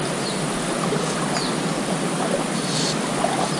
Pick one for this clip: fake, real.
real